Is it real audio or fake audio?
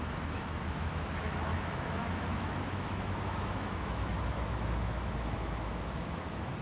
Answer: fake